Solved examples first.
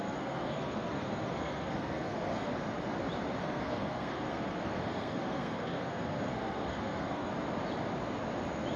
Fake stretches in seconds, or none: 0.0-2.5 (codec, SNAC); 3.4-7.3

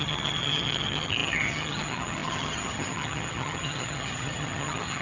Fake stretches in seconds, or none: 0.0-5.0 (vocoder, HiFi-GAN)

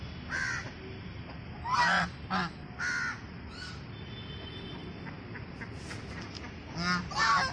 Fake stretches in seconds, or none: none